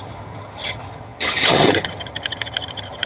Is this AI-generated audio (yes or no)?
yes